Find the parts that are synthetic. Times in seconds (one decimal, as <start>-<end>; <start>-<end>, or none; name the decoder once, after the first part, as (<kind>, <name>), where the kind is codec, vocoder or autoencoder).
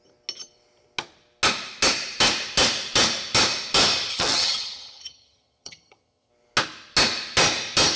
4.1-6.3 (vocoder, HiFi-GAN)